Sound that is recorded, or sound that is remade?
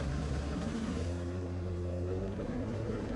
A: remade